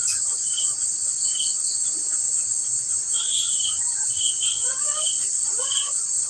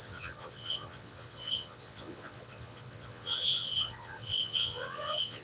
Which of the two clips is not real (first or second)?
second